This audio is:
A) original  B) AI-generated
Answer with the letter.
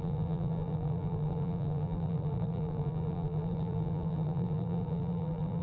B